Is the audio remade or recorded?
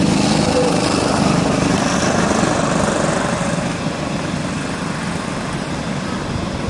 recorded